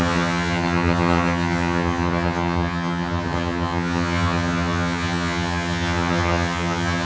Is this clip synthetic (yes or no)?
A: yes